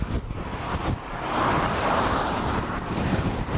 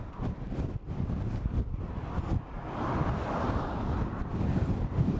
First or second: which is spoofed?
first